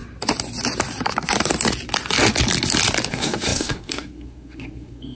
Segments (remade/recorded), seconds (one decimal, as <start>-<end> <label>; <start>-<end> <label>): 0.0-3.1 recorded; 3.1-5.2 remade

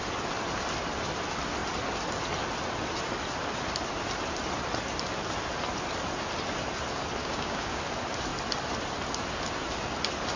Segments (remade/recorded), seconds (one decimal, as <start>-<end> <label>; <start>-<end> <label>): 0.0-7.2 recorded; 7.2-7.8 remade; 7.8-10.4 recorded

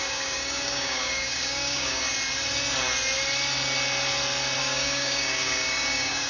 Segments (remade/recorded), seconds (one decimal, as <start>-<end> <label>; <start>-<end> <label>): 0.0-2.0 remade; 2.0-4.6 recorded; 4.6-6.3 remade

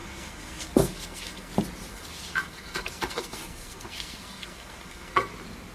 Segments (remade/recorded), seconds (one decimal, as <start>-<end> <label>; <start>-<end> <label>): 0.0-1.5 remade; 1.5-1.9 recorded; 1.9-5.3 remade; 5.3-5.7 recorded

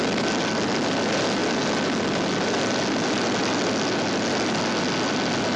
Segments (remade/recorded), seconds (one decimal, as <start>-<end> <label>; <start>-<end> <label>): 0.0-5.6 recorded